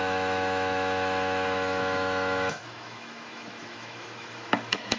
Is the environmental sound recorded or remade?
remade